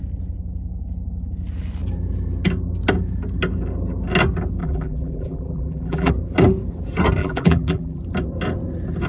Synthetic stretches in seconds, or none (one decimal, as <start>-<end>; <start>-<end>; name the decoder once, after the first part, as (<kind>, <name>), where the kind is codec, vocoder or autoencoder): 4.6-6.1 (vocoder, BigVGAN v2); 7.2-8.0